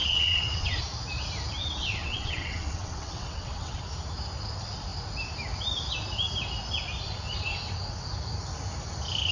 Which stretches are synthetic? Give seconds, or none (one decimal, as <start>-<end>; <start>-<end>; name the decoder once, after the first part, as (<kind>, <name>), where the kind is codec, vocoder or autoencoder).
0.0-0.8 (vocoder, WaveNeXt); 1.6-3.8